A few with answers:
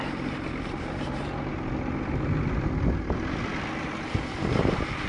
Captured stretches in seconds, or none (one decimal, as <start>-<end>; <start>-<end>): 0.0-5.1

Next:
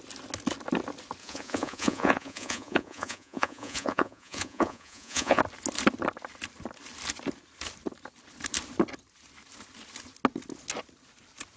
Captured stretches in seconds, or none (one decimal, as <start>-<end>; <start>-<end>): 0.0-1.2; 5.4-11.6

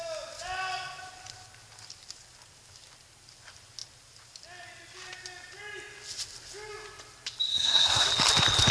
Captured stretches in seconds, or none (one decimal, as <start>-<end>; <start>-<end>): 0.0-7.5; 8.1-8.7

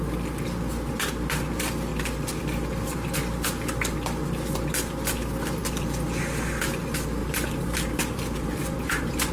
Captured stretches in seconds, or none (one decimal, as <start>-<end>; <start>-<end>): 0.0-7.2

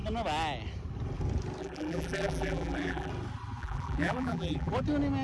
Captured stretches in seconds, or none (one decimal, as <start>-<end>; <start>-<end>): 0.0-1.6; 3.1-3.6; 4.7-5.2

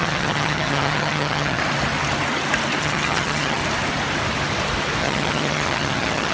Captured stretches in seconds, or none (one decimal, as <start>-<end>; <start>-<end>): 1.6-2.8; 3.6-5.0

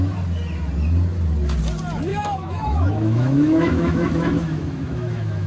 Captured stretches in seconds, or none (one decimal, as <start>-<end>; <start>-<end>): 0.0-2.1